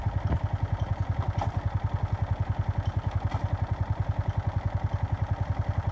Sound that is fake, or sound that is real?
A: real